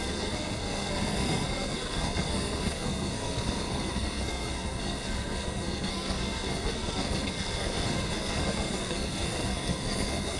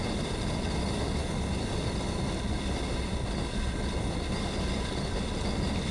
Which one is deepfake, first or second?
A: first